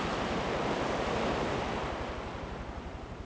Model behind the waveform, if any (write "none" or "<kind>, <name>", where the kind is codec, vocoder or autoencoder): none